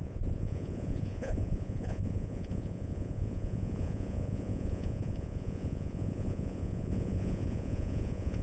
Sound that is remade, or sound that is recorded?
remade